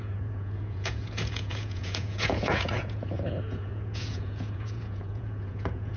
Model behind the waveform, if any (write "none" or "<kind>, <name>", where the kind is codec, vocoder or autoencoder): vocoder, Vocos